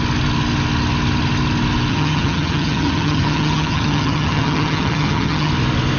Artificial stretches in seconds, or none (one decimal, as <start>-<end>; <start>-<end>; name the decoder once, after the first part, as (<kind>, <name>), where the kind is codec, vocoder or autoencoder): 1.9-5.5 (vocoder, HiFi-GAN)